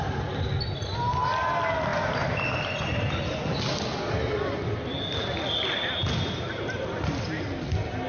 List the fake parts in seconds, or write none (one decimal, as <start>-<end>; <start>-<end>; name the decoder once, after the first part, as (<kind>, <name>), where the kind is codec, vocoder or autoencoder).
none